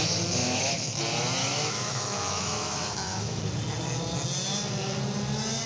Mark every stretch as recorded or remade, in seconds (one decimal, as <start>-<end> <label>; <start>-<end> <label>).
0.0-0.4 recorded; 0.4-1.0 remade; 1.0-1.4 recorded; 1.4-3.4 remade; 3.4-5.7 recorded

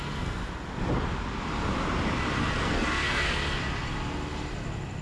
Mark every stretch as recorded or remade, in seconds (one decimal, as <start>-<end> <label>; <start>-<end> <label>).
0.0-0.4 remade; 0.4-2.4 recorded; 2.4-3.6 remade; 3.6-5.0 recorded

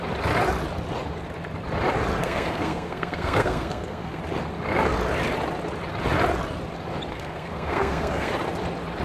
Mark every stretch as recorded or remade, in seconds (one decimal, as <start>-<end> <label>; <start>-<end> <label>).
0.0-2.2 recorded; 2.2-4.2 remade; 4.2-7.1 recorded; 7.1-8.3 remade; 8.3-9.0 recorded

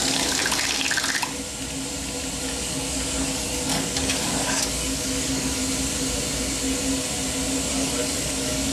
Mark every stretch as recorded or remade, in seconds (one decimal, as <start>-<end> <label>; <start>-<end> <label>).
0.0-0.4 remade; 0.4-2.4 recorded; 2.4-5.6 remade; 5.6-7.7 recorded; 7.7-8.7 remade